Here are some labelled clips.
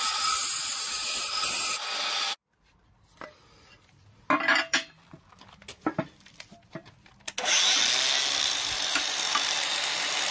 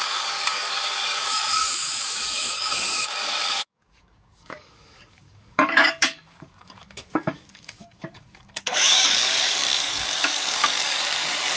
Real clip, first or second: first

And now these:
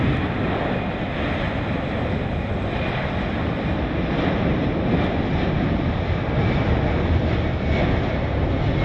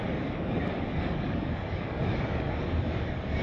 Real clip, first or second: first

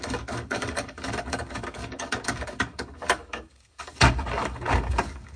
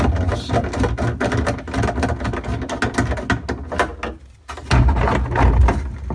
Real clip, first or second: second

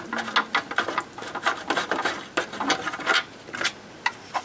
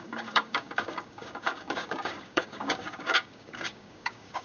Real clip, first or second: first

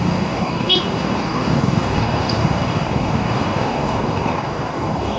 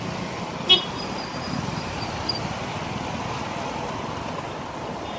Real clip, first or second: second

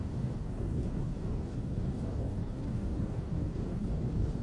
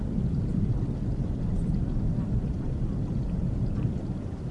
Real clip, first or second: second